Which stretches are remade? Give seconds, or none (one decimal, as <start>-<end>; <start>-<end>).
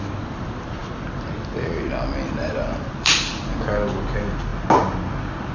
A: 2.4-3.6